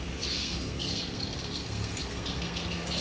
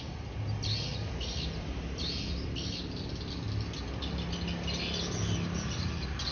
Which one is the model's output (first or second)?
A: first